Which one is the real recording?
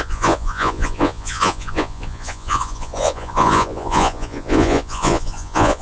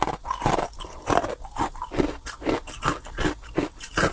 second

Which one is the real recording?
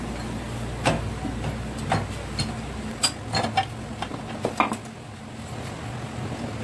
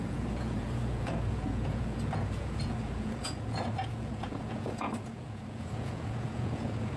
first